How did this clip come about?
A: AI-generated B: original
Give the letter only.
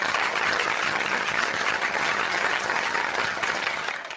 A